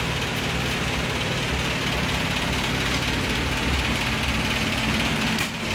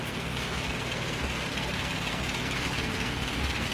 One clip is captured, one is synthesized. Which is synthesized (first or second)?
second